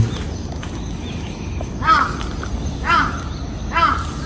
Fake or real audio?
real